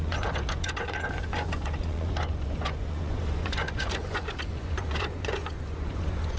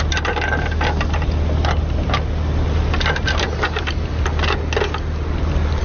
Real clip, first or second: second